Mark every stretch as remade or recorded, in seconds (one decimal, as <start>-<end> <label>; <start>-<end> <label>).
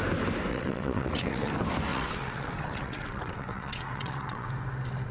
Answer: 0.0-0.5 recorded; 0.5-1.5 remade; 1.5-1.9 recorded; 1.9-4.5 remade; 4.5-5.1 recorded